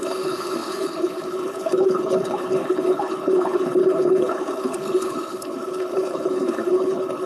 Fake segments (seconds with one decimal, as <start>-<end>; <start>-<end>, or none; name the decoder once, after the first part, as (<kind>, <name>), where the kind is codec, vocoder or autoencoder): 0.0-7.3 (codec, HILCodec)